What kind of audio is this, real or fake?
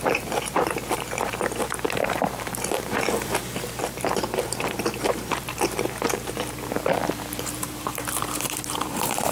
fake